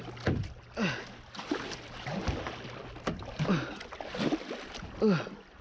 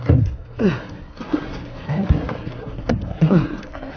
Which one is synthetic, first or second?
second